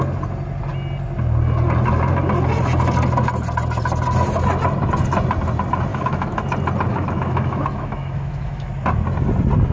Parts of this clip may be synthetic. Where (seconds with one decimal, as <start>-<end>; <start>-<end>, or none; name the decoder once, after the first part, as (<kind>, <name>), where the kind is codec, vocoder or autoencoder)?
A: 5.9-6.4 (autoencoder, DAC-VAE); 6.9-8.7